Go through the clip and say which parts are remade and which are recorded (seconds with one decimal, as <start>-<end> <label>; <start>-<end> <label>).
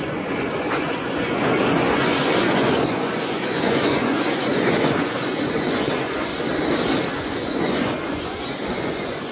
0.0-6.3 remade; 6.3-7.1 recorded; 7.1-9.3 remade